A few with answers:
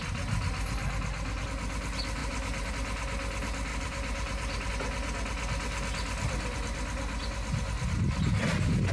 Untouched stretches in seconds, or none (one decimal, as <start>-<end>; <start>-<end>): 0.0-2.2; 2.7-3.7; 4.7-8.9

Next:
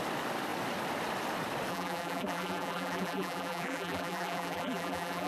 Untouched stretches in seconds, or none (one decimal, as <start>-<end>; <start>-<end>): 0.0-1.7

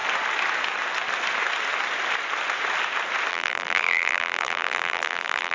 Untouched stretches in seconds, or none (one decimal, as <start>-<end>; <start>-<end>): 0.0-3.3

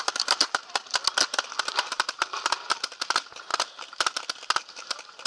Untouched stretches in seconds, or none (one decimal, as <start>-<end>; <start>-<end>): 1.0-1.6; 3.5-4.6

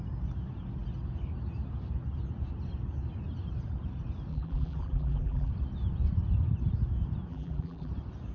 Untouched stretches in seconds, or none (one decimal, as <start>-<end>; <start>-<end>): 0.0-4.3; 5.5-7.3; 7.9-8.3

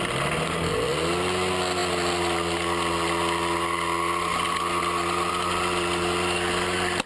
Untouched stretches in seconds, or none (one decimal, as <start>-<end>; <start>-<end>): 0.0-7.1

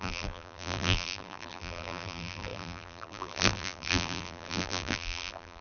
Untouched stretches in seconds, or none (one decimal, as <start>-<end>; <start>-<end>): none